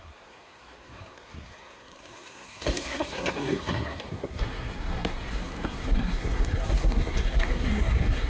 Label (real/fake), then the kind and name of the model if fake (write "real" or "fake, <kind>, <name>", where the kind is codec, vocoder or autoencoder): fake, codec, SNAC